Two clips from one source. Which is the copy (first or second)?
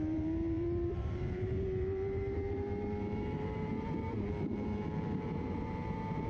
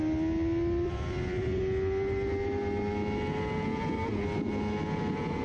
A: first